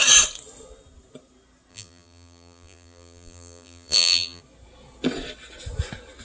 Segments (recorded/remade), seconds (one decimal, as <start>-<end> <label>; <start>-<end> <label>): 0.0-1.7 recorded; 1.7-4.4 remade; 4.4-6.2 recorded